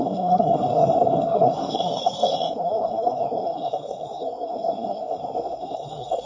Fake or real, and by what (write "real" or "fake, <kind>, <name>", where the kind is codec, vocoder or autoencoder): fake, codec, SNAC